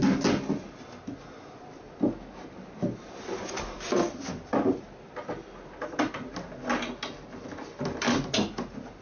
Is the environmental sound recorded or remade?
recorded